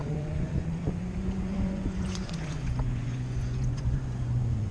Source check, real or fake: fake